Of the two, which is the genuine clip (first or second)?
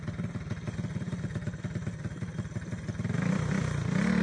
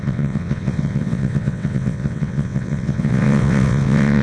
first